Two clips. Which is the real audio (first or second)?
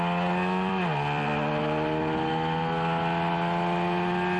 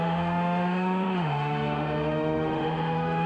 first